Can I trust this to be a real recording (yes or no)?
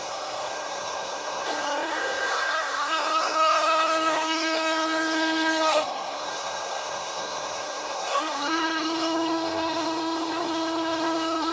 no